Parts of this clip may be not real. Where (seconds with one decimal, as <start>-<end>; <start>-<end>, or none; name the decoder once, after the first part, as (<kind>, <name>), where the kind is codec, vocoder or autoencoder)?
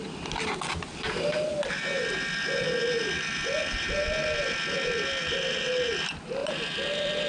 6.4-7.3 (vocoder, BigVGAN v2)